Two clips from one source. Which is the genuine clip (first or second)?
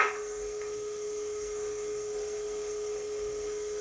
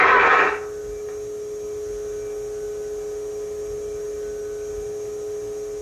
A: second